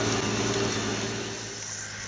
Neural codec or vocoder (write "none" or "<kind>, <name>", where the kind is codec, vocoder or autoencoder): none